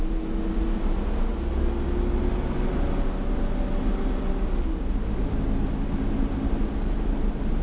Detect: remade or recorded recorded